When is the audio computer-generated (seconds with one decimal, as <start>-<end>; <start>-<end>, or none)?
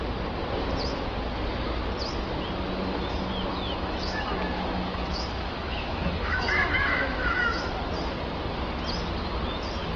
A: 3.5-7.6